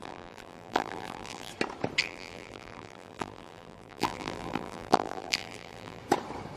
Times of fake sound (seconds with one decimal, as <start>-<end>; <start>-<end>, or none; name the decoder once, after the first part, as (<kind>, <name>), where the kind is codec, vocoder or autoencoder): 0.0-1.5 (vocoder, BigVGAN v2); 2.0-6.0